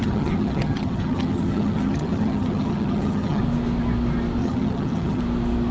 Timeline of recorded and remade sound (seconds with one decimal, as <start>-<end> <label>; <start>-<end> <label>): 0.0-3.4 remade; 3.4-4.4 recorded; 4.4-5.2 remade; 5.2-5.7 recorded